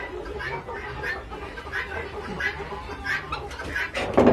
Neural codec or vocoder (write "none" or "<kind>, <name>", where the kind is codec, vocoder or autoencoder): none